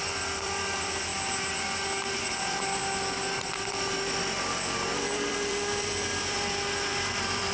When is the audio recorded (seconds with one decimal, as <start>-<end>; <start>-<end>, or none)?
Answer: 1.1-2.1; 2.8-3.7